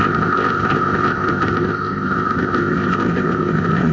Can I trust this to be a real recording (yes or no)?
no